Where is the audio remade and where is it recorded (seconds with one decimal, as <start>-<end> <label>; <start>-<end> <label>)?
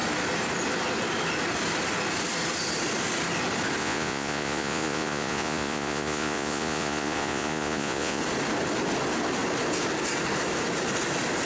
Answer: 0.0-3.8 recorded; 3.8-8.2 remade; 8.2-11.5 recorded